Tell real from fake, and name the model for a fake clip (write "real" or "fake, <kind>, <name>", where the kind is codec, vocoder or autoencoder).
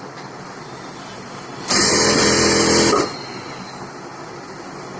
fake, vocoder, BigVGAN v2